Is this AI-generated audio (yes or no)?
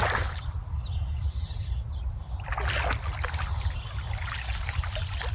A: no